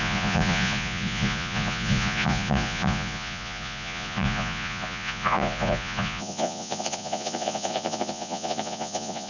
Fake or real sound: fake